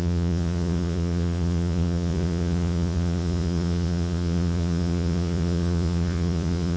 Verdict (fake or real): fake